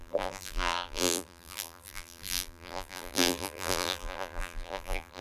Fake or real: fake